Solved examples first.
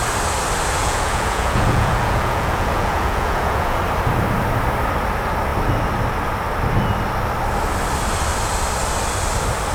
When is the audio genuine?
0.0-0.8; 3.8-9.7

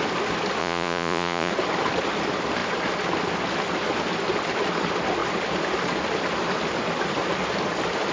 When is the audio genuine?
0.0-0.6; 1.5-8.1

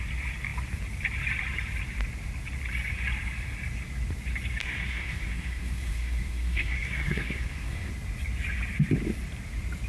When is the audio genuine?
0.0-4.6; 7.9-9.9

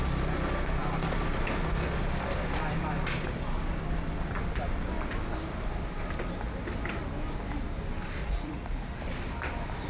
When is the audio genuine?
0.0-8.2; 9.0-9.9

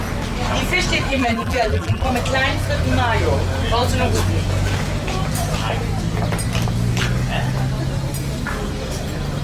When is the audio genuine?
0.0-1.1; 2.1-9.4

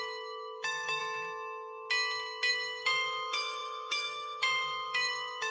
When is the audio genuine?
1.0-2.5